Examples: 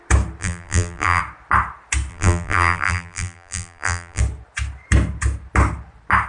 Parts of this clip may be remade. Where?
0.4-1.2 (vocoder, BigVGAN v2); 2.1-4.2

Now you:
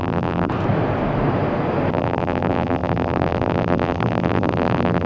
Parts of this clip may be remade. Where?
0.0-0.5 (vocoder, BigVGAN v2); 1.9-5.1

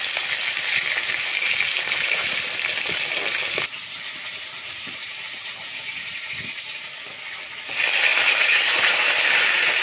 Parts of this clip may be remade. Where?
1.7-2.5 (vocoder, BigVGAN v2); 3.3-7.0; 8.1-9.1

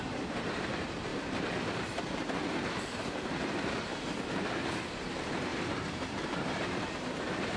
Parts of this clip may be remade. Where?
0.0-3.9 (vocoder, BigVGAN v2); 4.4-7.6

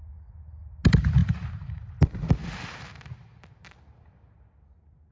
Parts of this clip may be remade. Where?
1.2-1.9 (vocoder, BigVGAN v2); 2.4-3.8

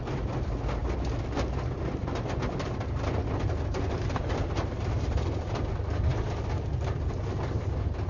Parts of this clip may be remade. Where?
0.0-8.1 (vocoder, BigVGAN v2)